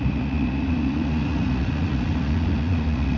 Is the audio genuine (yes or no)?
no